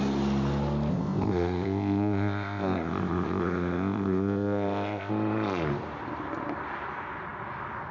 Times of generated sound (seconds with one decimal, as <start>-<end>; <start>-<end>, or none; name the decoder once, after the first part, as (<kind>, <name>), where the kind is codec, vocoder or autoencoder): 0.9-5.1 (codec, ZipCodec)